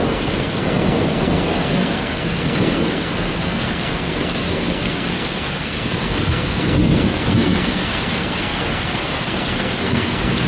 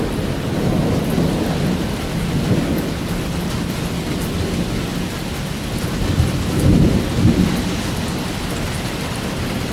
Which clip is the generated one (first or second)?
first